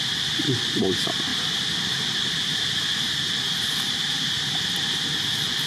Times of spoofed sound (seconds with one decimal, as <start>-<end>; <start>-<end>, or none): 1.3-4.7